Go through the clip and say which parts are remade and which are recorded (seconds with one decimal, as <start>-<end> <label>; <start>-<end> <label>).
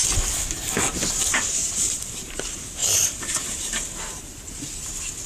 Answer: 0.0-1.6 recorded; 1.6-2.4 remade; 2.4-2.8 recorded; 2.8-4.3 remade; 4.3-5.3 recorded